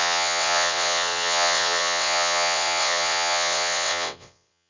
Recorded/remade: remade